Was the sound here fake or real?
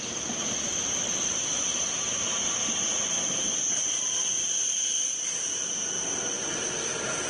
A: real